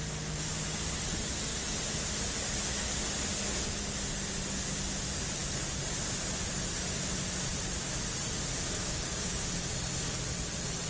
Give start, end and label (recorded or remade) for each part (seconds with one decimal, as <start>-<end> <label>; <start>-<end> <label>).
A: 0.0-8.8 recorded; 8.8-9.4 remade; 9.4-10.9 recorded